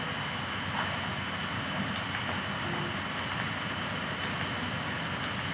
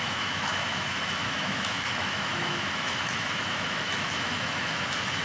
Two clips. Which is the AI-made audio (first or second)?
second